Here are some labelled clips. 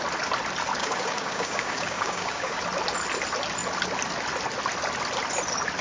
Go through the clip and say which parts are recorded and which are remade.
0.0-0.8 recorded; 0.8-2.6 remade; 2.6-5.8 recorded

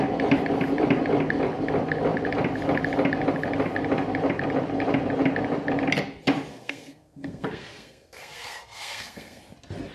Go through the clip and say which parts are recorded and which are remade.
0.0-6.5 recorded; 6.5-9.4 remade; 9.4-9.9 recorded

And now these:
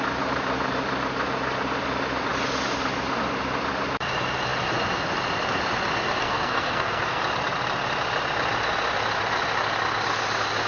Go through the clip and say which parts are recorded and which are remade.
0.0-6.2 recorded; 6.2-7.2 remade; 7.2-10.7 recorded

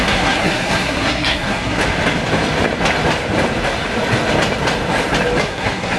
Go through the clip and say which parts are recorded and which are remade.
0.0-1.8 remade; 1.8-5.4 recorded; 5.4-6.0 remade

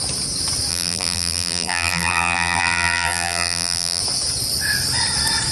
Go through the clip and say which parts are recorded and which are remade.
0.0-0.7 recorded; 0.7-4.0 remade; 4.0-5.5 recorded

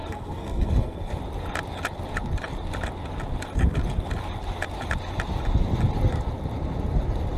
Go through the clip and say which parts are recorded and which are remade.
0.0-1.2 remade; 1.2-7.4 recorded

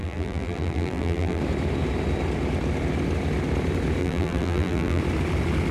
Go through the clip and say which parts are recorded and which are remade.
0.0-1.4 remade; 1.4-4.0 recorded; 4.0-5.0 remade; 5.0-5.7 recorded